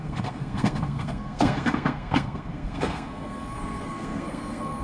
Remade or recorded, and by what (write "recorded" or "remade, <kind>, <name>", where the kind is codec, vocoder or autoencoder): remade, codec, SNAC